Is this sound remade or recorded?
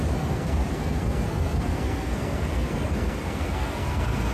remade